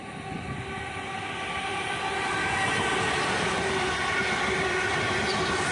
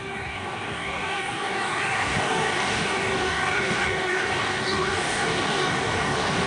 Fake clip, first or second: second